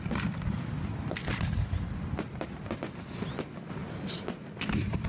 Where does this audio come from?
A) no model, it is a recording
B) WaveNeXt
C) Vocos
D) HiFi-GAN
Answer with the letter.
A